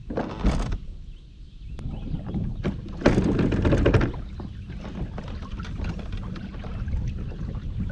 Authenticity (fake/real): real